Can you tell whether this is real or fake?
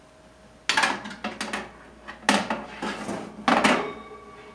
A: real